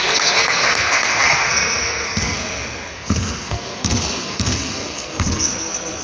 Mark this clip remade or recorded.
remade